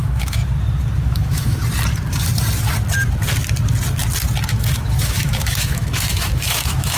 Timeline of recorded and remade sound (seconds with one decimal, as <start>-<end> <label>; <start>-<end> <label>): 0.0-0.4 remade; 0.4-1.0 recorded; 1.0-1.6 remade; 1.6-4.5 recorded; 4.5-7.0 remade